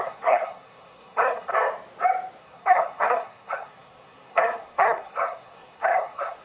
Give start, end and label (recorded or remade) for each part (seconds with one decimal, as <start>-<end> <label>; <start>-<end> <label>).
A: 0.0-1.5 remade; 1.5-2.4 recorded; 2.4-6.4 remade